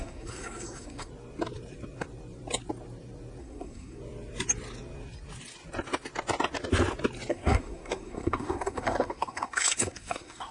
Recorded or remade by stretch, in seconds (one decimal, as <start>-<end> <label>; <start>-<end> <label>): 0.0-1.1 remade; 1.1-3.4 recorded; 3.4-4.0 remade; 4.0-7.3 recorded; 7.3-10.5 remade